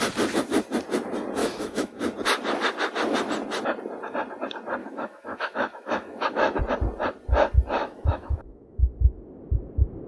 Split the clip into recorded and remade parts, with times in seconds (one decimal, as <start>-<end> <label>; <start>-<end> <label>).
0.0-1.4 recorded; 1.4-2.0 remade; 2.0-4.8 recorded; 4.8-6.6 remade; 6.6-7.8 recorded; 7.8-8.9 remade; 8.9-10.1 recorded